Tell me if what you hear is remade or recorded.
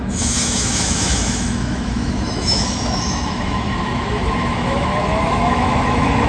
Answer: remade